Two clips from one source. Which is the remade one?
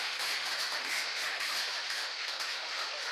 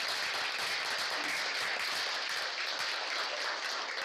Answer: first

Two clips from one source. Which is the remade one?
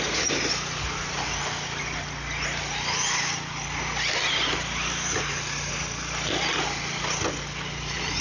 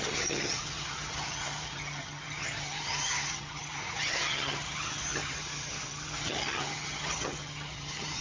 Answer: second